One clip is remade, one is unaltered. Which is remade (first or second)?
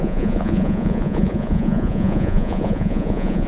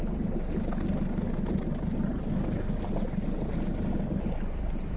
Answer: first